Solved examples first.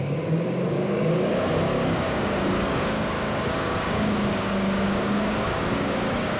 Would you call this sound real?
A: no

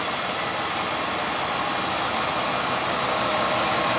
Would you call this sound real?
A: yes